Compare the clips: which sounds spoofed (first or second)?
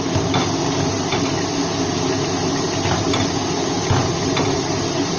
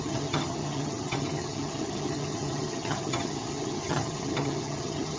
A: second